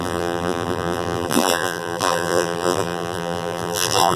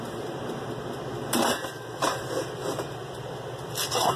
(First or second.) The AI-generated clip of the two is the first